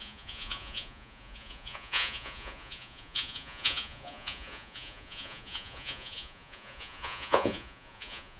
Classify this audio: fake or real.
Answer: fake